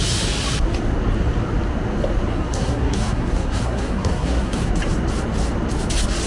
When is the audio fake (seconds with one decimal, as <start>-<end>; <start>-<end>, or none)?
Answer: 2.3-4.7